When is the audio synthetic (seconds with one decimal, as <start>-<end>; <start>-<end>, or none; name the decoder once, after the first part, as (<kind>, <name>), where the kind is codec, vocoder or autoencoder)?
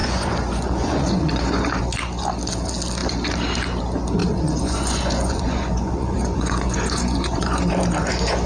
0.0-1.8 (vocoder, Vocos); 4.2-7.6